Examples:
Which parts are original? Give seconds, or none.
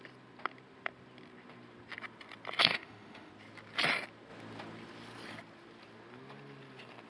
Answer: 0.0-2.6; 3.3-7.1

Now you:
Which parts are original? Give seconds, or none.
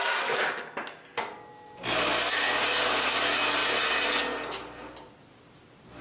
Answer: 0.0-6.0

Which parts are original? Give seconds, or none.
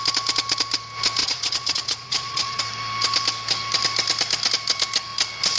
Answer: 0.0-1.2; 2.6-5.6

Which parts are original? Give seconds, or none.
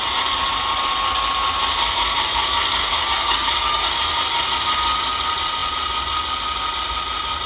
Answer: 0.0-2.9; 3.9-7.5